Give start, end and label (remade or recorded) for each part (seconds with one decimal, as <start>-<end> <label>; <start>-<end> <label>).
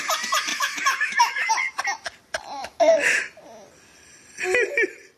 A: 0.0-0.5 recorded; 0.5-1.5 remade; 1.5-2.6 recorded; 2.6-3.2 remade; 3.2-5.2 recorded